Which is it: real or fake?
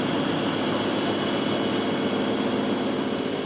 real